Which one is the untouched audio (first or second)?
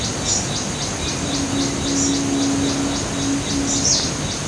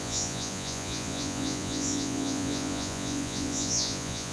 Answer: first